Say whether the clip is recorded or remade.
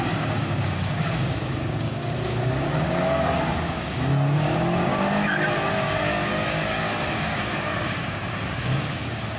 remade